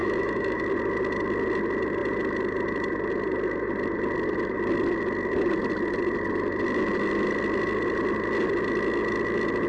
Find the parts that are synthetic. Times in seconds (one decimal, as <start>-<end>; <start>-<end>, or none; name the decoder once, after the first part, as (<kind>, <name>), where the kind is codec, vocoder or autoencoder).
0.0-0.6 (autoencoder, DAC-VAE)